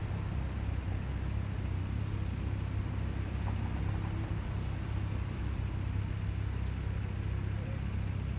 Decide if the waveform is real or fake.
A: real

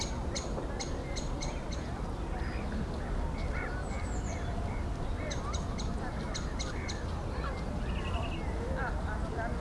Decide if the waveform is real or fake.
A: real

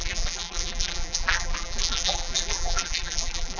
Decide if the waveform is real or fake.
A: fake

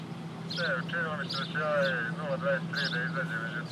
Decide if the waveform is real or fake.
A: real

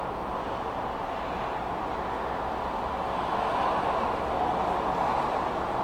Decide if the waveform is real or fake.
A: real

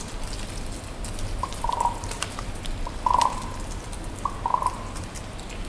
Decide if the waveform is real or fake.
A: real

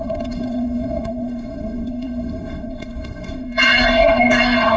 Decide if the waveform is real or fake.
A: fake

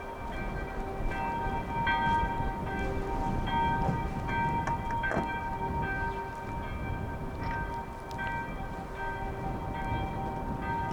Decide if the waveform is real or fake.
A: real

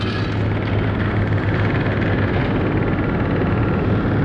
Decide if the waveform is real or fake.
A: real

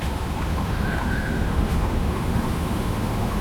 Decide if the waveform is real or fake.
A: fake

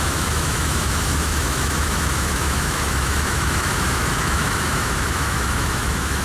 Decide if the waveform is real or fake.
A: fake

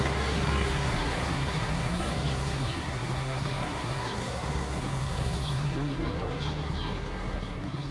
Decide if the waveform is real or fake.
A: fake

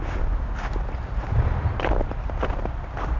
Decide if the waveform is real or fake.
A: real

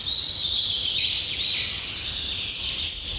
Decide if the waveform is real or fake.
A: real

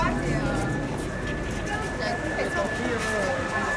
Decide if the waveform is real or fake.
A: real